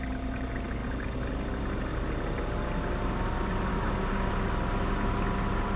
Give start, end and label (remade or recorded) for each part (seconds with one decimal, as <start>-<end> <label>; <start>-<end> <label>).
0.0-3.7 recorded; 3.7-4.3 remade; 4.3-5.8 recorded